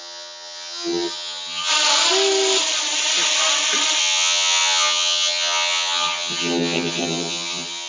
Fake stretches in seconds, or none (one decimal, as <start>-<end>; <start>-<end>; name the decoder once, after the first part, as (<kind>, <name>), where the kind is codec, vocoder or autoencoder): 0.0-1.7 (vocoder, HiFi-GAN); 4.0-7.9